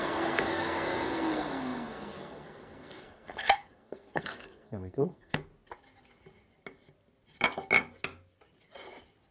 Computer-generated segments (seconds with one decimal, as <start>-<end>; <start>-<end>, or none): 0.0-5.5